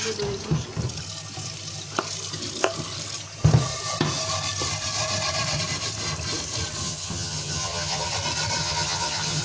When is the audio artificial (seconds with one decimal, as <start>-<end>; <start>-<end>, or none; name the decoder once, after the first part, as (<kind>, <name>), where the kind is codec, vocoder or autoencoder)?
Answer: 6.8-8.1 (vocoder, HiFi-GAN); 8.6-9.4